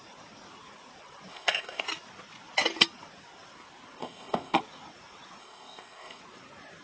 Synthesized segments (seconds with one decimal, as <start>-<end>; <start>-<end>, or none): 1.3-1.8; 4.0-4.6; 5.4-6.2